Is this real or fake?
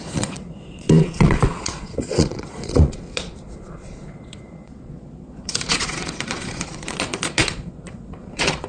fake